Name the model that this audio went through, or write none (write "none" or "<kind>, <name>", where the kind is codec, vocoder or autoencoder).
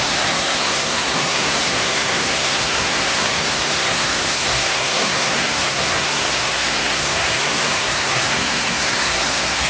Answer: codec, SNAC